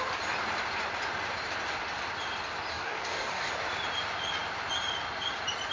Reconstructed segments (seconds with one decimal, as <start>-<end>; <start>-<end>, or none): 2.7-3.5